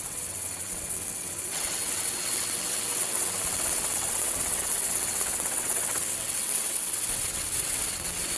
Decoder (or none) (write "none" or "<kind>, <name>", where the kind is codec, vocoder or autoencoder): vocoder, WaveNeXt